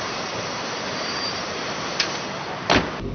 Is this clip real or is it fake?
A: real